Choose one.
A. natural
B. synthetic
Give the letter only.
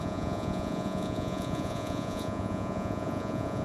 B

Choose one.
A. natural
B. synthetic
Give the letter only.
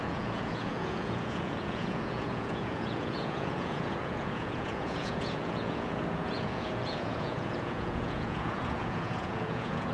B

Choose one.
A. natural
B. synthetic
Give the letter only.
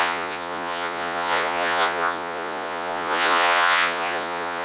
B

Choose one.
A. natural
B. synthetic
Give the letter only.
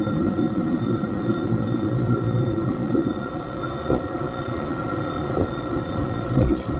B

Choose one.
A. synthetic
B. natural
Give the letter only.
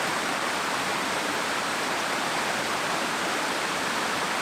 B